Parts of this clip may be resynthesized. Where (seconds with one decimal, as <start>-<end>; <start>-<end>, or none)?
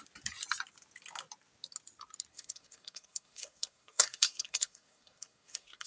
2.3-5.9